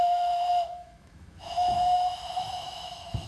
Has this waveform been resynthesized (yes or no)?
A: yes